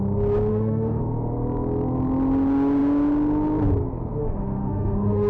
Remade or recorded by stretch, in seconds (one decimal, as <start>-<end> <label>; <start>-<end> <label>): 0.0-0.5 recorded; 0.5-1.0 remade; 1.0-4.2 recorded; 4.2-5.3 remade